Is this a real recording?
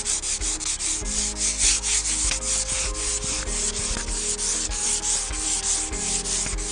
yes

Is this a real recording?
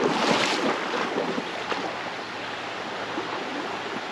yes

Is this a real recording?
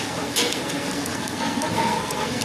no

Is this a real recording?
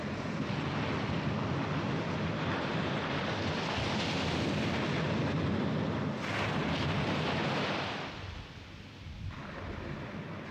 yes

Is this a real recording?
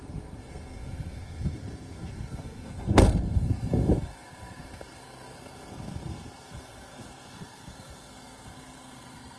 no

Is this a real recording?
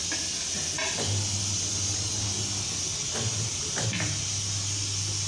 yes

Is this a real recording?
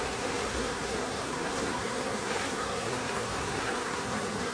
no